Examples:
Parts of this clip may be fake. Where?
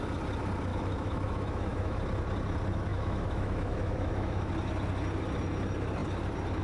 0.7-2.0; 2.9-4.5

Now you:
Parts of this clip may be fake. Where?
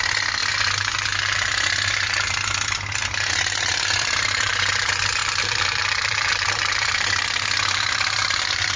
0.0-0.4; 3.3-8.8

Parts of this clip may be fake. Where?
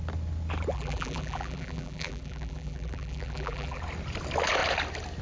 0.7-3.8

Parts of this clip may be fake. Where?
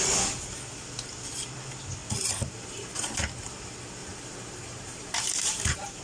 4.0-6.0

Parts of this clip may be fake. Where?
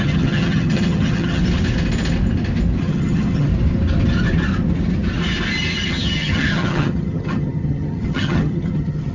0.0-1.4; 2.8-3.5; 5.9-9.1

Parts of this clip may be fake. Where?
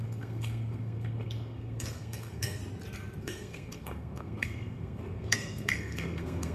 0.0-2.6; 3.2-6.5